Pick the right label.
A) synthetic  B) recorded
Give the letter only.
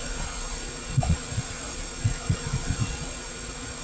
A